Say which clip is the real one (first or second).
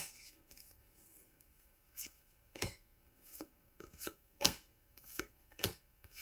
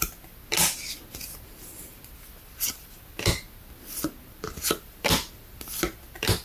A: second